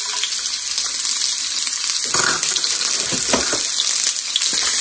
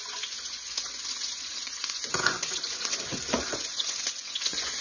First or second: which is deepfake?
second